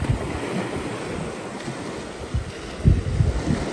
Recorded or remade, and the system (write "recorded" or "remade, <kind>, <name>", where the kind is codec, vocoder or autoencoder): recorded